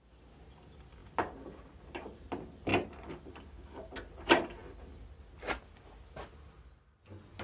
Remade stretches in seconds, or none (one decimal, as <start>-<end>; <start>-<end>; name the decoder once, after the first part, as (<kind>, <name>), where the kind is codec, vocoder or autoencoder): none